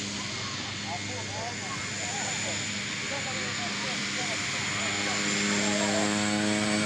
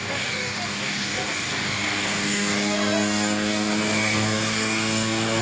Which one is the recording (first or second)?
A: first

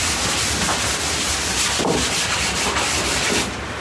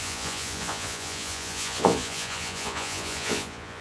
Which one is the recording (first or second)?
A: first